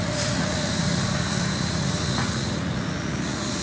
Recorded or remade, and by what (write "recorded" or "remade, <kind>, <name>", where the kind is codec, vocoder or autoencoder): remade, vocoder, Vocos